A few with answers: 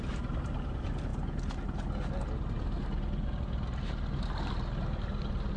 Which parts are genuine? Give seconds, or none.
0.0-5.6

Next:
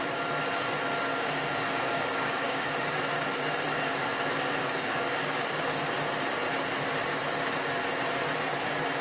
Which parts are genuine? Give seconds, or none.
0.0-1.1; 5.8-9.0